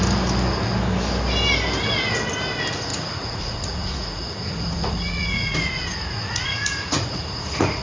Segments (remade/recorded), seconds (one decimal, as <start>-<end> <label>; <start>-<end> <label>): 0.0-2.9 recorded; 2.9-7.8 remade